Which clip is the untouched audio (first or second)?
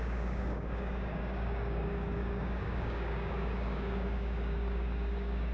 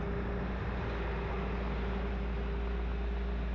second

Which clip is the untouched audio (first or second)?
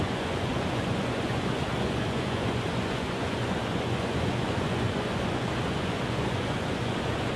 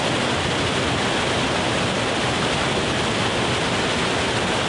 second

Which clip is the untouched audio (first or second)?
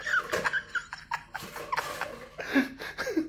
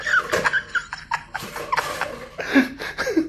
first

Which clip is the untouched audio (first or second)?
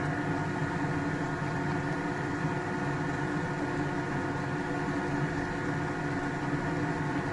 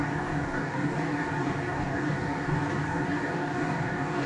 first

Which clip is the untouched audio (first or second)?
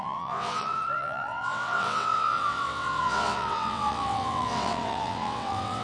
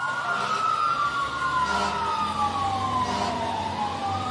second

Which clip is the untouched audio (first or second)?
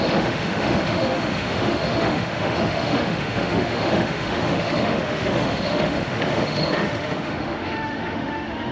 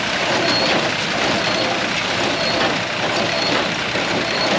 second